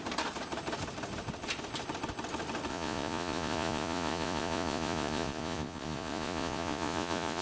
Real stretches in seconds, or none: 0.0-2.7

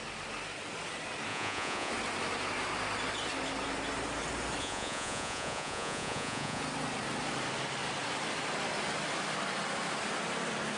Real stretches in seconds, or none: 0.0-1.3; 1.9-4.6; 6.6-10.8